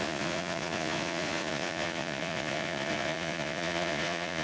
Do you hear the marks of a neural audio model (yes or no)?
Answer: yes